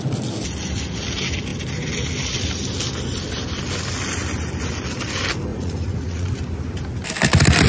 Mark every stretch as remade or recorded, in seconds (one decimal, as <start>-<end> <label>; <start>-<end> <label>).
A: 0.0-5.5 recorded; 5.5-6.3 remade; 6.3-7.7 recorded